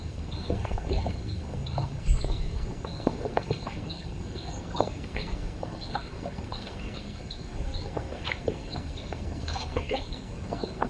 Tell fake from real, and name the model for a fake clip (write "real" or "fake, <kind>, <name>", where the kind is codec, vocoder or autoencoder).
fake, codec, SNAC